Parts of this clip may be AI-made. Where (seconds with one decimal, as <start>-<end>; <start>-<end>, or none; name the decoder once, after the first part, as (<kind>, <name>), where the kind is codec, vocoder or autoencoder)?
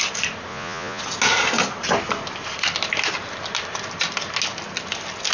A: 0.5-1.0 (vocoder, Vocos)